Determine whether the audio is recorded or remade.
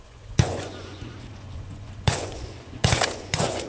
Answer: remade